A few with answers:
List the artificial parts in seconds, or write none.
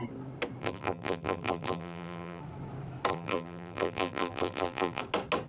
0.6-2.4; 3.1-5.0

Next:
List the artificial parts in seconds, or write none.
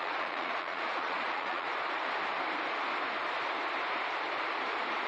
0.0-1.7